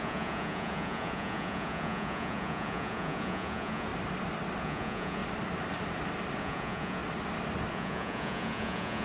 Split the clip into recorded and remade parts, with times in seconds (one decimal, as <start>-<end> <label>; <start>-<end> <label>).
0.0-3.9 remade; 3.9-4.6 recorded; 4.6-5.2 remade; 5.2-6.4 recorded; 6.4-7.0 remade; 7.0-7.7 recorded; 7.7-9.0 remade